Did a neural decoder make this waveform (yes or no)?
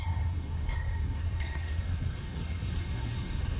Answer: yes